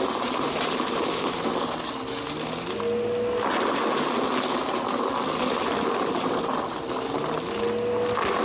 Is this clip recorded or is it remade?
recorded